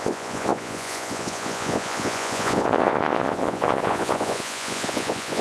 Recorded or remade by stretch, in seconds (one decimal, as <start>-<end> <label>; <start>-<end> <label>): 0.0-5.4 remade